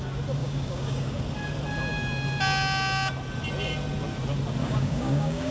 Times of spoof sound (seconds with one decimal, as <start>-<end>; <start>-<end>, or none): 0.4-1.2; 4.6-5.5